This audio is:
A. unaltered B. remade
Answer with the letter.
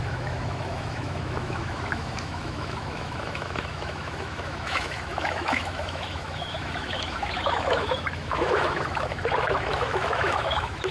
B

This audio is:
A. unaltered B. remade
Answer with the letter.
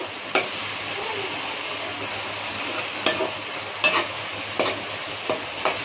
A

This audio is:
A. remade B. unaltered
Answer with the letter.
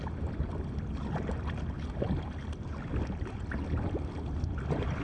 B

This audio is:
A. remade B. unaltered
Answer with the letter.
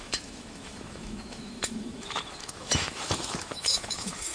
A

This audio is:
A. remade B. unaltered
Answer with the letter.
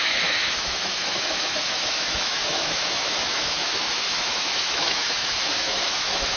A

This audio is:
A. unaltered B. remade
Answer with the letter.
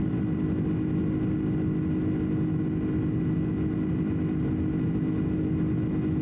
A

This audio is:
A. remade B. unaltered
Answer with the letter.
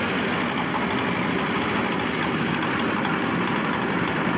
B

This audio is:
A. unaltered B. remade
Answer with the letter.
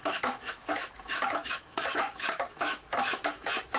B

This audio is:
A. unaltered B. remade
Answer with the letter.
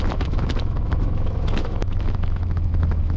B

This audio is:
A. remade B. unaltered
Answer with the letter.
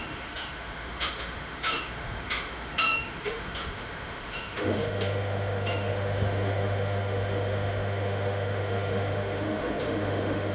A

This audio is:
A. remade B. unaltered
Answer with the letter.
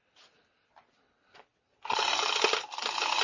B